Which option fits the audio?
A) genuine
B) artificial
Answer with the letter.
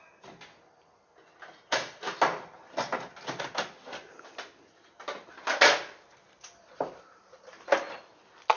A